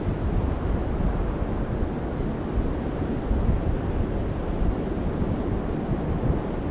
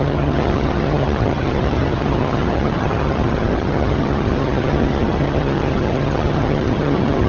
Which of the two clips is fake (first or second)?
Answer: second